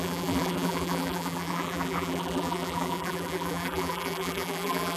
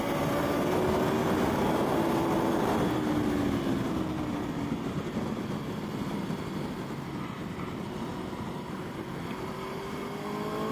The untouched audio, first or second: second